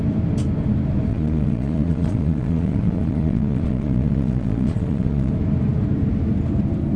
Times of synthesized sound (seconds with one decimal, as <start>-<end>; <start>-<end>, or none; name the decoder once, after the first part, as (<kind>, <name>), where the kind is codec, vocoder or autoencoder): 1.1-5.3 (vocoder, Vocos)